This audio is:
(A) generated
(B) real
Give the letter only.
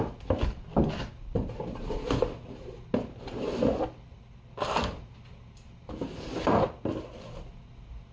B